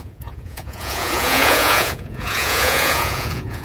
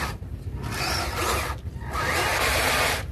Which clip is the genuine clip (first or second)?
second